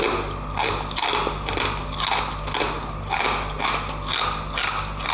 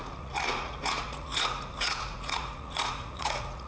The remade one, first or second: second